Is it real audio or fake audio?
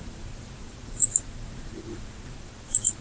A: fake